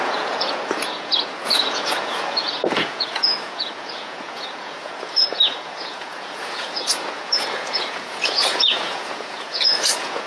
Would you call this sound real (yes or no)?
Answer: no